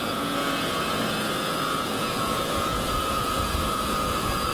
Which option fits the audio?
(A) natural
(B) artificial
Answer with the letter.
B